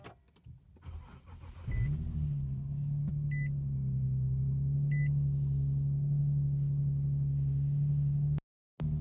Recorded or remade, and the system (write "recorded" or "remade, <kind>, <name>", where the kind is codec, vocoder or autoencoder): recorded